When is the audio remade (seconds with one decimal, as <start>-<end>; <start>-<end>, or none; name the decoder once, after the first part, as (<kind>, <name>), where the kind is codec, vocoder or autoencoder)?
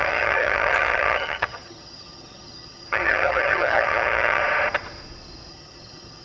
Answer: 0.0-4.4 (vocoder, HiFi-GAN); 5.5-6.2